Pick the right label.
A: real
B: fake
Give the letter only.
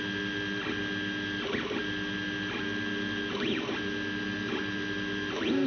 A